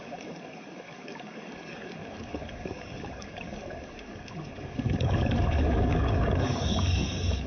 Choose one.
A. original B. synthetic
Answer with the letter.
B